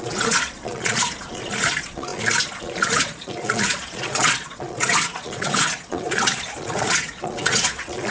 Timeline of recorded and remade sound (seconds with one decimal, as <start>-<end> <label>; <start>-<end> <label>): 0.0-8.1 remade